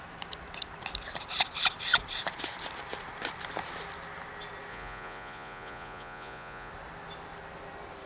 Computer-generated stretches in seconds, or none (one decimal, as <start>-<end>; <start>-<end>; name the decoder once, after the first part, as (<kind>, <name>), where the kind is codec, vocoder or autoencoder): 4.7-6.7 (vocoder, Vocos)